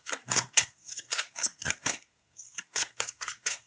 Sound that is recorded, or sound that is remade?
remade